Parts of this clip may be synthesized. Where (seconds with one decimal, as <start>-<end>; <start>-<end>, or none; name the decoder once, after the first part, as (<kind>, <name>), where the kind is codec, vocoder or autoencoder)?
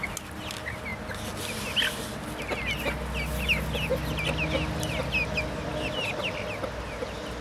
none